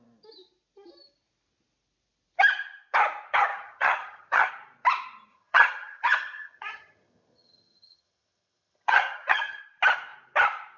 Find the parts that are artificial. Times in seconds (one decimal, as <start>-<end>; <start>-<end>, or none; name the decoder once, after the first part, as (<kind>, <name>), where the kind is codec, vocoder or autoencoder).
3.5-4.5 (vocoder, HiFi-GAN); 5.3-9.6